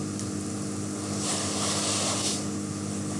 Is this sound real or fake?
real